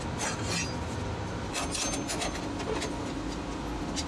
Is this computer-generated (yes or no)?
no